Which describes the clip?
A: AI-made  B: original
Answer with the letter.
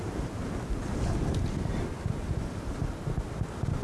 B